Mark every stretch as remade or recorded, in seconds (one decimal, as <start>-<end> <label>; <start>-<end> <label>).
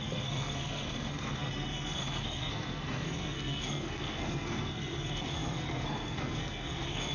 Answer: 0.0-7.1 remade